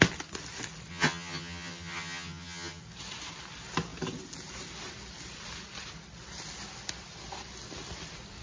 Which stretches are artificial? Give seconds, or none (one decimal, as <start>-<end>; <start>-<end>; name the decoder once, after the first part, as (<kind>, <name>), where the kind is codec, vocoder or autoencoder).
0.9-2.8 (vocoder, HiFi-GAN)